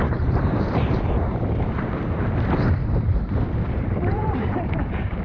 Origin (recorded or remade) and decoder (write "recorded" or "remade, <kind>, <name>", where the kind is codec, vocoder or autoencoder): remade, vocoder, BigVGAN v2